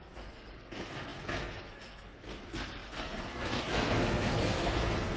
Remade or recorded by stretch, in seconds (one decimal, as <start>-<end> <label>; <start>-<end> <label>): 0.0-5.2 remade